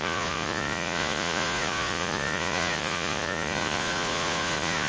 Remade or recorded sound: remade